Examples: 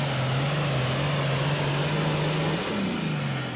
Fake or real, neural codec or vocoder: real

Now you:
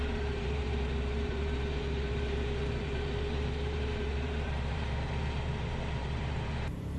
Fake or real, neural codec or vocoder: fake, vocoder, BigVGAN v2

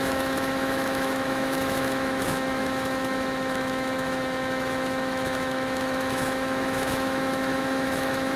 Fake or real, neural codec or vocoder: fake, autoencoder, DAC-VAE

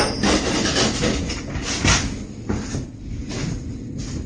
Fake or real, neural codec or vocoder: real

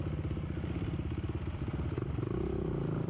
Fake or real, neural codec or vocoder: real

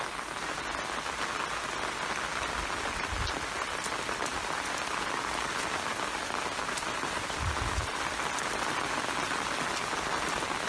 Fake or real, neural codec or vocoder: real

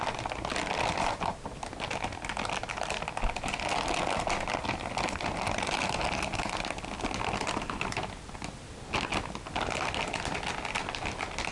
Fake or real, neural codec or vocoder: real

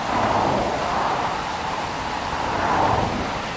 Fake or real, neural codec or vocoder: fake, vocoder, BigVGAN v2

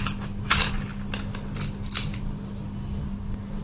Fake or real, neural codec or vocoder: real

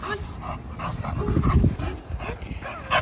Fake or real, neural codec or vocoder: real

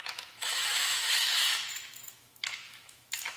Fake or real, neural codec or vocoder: fake, autoencoder, DAC-VAE